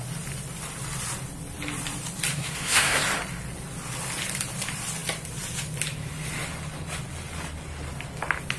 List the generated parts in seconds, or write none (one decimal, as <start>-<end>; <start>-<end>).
2.3-3.0